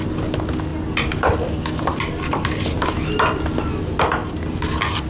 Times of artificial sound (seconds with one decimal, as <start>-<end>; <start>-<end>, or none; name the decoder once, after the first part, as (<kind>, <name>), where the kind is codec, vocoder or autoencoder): none